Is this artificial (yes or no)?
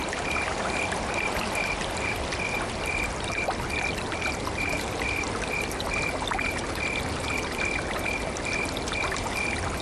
no